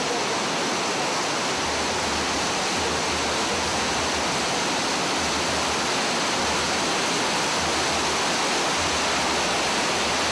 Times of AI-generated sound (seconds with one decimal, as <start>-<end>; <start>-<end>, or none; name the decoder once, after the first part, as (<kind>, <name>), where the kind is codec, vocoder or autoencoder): 3.7-7.6 (vocoder, BigVGAN v2)